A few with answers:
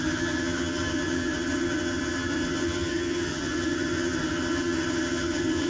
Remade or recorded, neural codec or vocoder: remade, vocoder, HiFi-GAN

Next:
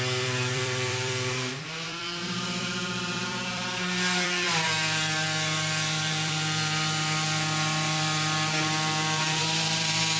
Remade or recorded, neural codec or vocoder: remade, vocoder, BigVGAN v2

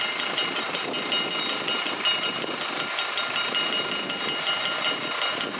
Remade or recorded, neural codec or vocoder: recorded